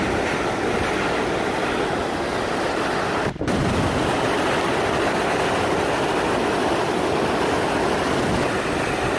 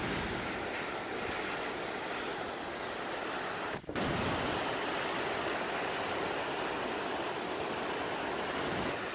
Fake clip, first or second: first